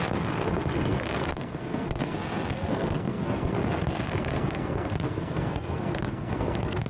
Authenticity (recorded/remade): remade